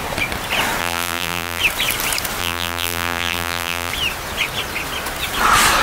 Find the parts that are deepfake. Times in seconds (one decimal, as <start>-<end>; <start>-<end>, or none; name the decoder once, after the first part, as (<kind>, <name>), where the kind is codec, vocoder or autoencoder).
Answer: 0.8-1.6 (vocoder, BigVGAN v2); 2.4-3.9

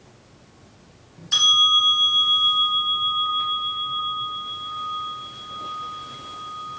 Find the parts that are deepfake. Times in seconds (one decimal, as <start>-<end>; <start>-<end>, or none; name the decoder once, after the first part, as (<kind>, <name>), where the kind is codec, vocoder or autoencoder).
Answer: none